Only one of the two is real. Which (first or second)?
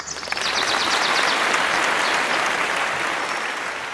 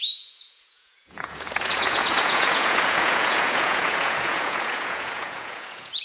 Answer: first